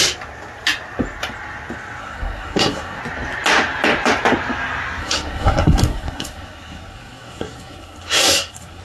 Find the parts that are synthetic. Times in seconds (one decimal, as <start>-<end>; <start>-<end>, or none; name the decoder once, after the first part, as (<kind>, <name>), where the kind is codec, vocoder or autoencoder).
2.0-3.0 (codec, SNAC); 5.0-8.8